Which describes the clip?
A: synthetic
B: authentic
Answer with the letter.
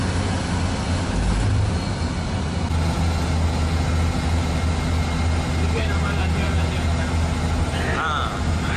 B